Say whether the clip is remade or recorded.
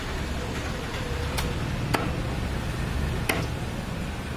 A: recorded